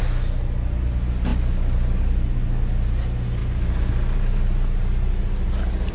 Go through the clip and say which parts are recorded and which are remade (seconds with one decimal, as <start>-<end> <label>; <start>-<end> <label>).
0.0-5.9 recorded